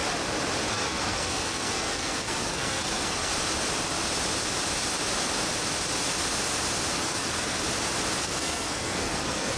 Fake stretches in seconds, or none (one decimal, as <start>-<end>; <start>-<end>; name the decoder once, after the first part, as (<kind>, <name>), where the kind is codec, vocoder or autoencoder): 0.7-3.3 (codec, SNAC); 6.9-7.6; 8.2-9.6